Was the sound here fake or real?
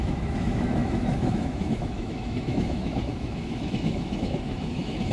fake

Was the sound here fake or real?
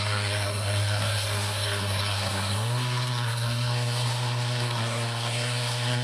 fake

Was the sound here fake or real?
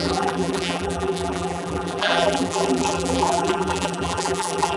fake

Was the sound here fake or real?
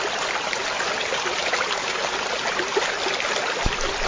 real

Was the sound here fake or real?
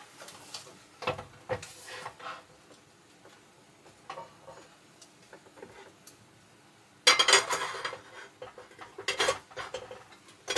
real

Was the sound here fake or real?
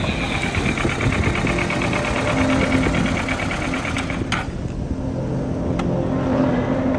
real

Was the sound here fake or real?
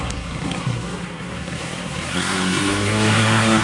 fake